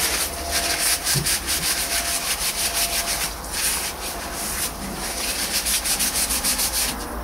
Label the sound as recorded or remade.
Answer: recorded